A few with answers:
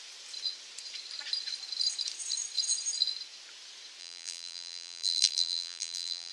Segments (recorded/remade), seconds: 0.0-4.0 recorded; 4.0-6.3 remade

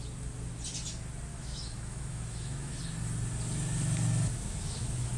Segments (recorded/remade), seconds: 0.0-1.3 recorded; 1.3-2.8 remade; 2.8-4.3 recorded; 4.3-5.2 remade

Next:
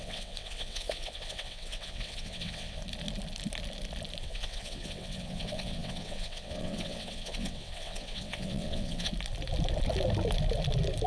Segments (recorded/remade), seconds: 0.0-2.8 remade; 2.8-4.2 recorded; 4.2-9.1 remade; 9.1-11.1 recorded

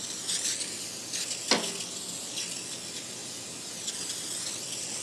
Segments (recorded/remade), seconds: 0.0-5.0 recorded

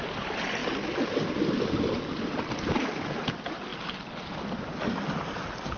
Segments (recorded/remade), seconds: 0.0-5.8 recorded

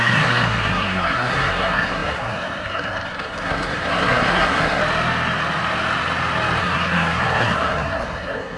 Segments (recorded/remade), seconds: 0.0-4.8 remade; 4.8-6.6 recorded; 6.6-8.6 remade

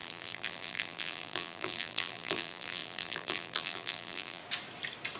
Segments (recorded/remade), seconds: 0.0-4.4 remade; 4.4-5.2 recorded

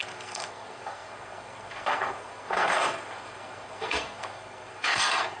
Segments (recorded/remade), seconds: 0.0-5.4 remade